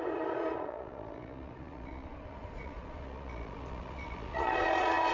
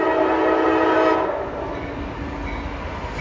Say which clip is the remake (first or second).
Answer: first